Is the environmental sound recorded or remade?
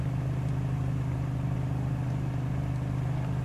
recorded